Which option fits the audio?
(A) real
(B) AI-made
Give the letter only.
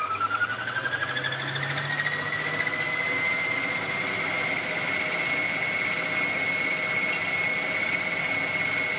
A